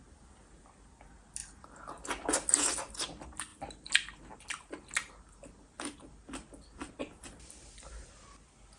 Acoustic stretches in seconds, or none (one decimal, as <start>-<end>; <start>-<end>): 0.0-8.8